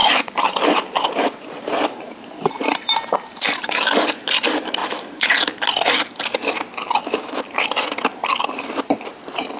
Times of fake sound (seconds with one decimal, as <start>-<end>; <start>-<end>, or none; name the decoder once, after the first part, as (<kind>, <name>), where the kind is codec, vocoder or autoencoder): 0.0-4.0 (vocoder, BigVGAN v2); 7.0-7.7